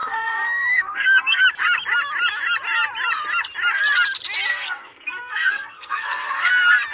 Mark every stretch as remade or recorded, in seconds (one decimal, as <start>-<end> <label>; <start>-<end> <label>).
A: 0.0-1.4 remade; 1.4-4.5 recorded; 4.5-6.5 remade; 6.5-6.9 recorded

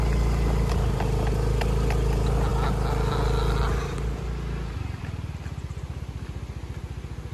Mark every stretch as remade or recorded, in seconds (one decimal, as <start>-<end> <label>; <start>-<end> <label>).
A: 0.0-7.3 recorded